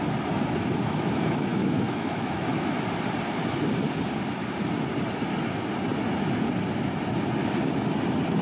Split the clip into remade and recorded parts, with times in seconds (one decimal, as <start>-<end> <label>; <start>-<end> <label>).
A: 0.0-0.8 recorded; 0.8-2.7 remade; 2.7-8.4 recorded